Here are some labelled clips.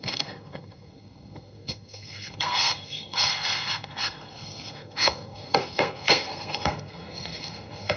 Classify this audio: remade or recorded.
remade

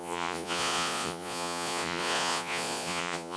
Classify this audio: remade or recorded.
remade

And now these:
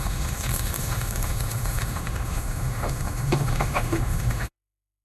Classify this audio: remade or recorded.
remade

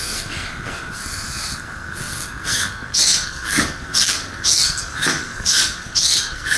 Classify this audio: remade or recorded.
remade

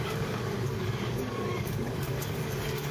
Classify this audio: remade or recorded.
remade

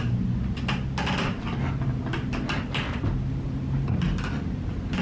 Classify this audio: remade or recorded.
recorded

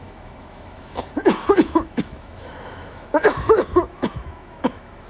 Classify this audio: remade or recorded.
remade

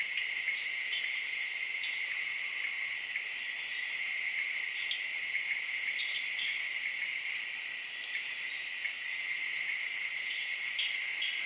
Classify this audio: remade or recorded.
recorded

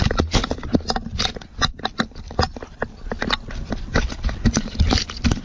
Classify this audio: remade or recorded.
recorded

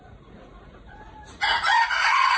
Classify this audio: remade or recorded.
remade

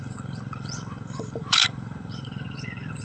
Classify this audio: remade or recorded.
remade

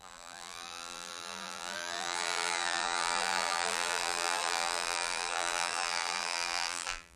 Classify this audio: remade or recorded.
remade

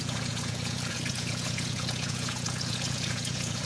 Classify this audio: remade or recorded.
remade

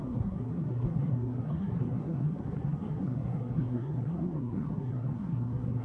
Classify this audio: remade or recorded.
remade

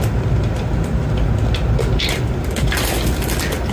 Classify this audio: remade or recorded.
recorded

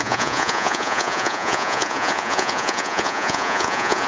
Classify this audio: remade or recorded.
remade